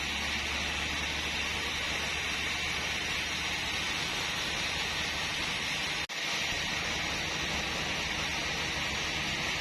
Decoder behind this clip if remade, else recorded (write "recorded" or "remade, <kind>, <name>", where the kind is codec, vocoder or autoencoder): recorded